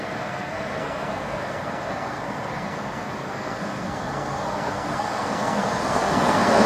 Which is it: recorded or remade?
remade